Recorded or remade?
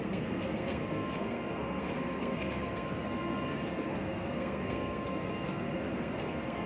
remade